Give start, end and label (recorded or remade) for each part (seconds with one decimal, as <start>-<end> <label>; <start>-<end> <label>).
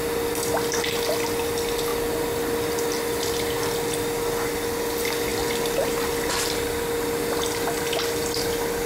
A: 0.0-8.9 recorded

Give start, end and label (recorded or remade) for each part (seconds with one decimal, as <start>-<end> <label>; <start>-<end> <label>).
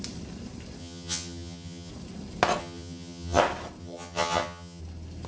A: 0.0-0.8 recorded; 0.8-1.9 remade; 1.9-2.6 recorded; 2.6-3.4 remade; 3.4-3.8 recorded; 3.8-4.8 remade; 4.8-5.3 recorded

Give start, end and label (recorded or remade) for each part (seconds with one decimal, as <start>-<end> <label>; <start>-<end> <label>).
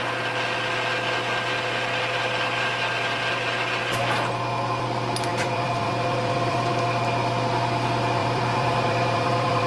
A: 0.0-5.3 recorded; 5.3-6.7 remade; 6.7-8.2 recorded; 8.2-9.7 remade